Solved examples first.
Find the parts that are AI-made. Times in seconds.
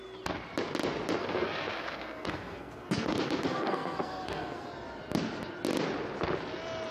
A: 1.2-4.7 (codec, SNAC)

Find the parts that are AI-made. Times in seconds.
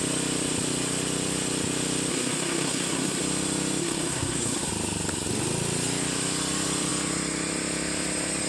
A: 2.1-3.2 (codec, SNAC); 3.8-4.7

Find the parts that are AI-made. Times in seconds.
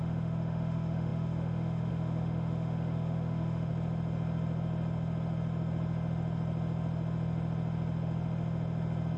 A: 0.0-3.7 (autoencoder, DAC-VAE)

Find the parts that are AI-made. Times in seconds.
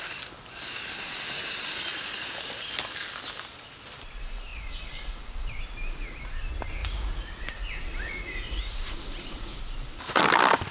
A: 1.9-2.4 (vocoder, Vocos); 4.5-5.6; 6.8-9.6